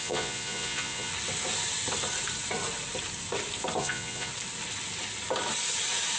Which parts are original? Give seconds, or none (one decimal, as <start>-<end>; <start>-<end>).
1.1-3.8; 4.3-6.2